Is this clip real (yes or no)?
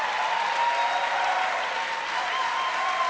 yes